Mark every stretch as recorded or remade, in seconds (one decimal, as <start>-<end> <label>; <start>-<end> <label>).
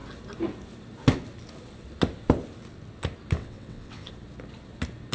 0.0-3.4 recorded; 3.4-4.1 remade; 4.1-5.1 recorded